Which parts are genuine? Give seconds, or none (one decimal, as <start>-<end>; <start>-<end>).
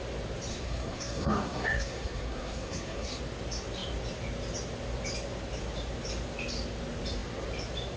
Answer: 0.0-0.5; 3.2-8.0